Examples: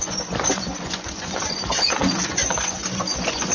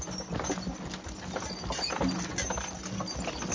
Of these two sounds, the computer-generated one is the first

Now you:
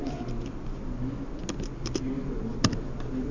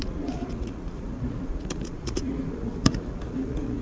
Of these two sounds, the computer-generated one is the second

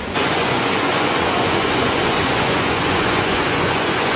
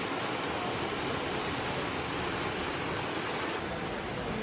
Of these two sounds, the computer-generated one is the first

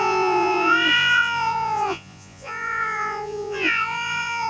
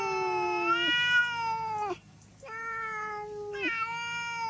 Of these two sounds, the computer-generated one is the first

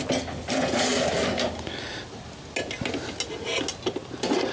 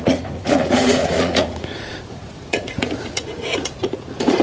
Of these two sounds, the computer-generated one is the second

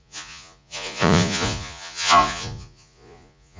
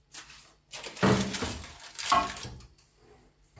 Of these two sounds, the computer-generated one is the first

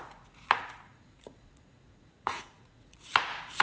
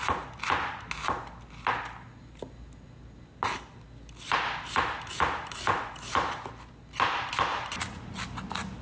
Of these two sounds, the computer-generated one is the first